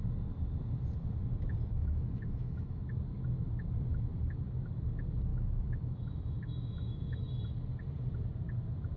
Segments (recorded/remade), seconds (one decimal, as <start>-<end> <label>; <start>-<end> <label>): 0.0-1.8 recorded; 1.8-2.8 remade; 2.8-5.3 recorded; 5.3-7.3 remade; 7.3-9.0 recorded